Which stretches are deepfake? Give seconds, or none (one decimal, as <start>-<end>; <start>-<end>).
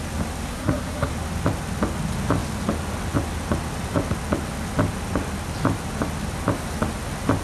0.5-1.1